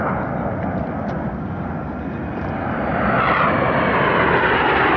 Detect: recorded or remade recorded